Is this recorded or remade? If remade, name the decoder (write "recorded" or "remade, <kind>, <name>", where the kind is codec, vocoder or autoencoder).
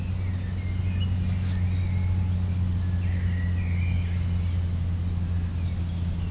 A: recorded